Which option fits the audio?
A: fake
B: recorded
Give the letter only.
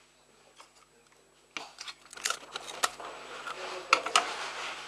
B